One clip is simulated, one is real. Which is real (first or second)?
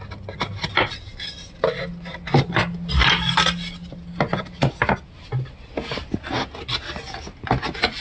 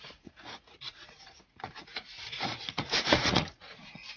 first